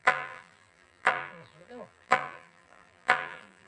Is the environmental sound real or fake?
fake